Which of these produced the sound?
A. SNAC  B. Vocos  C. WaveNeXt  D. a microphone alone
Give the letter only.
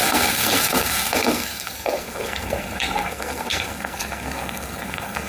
A